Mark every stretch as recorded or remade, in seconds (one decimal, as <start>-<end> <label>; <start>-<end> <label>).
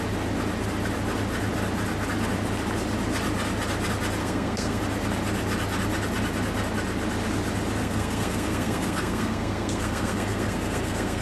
0.0-4.2 recorded; 4.2-4.8 remade; 4.8-7.8 recorded; 7.8-11.2 remade